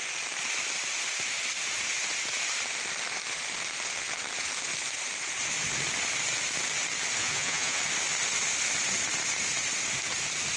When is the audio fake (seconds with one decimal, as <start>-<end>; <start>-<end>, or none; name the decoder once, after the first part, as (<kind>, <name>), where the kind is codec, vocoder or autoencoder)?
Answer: 7.2-7.8 (vocoder, Vocos)